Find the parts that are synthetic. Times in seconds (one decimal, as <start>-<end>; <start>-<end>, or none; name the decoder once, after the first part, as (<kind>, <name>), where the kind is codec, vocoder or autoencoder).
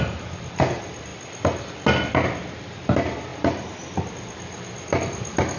none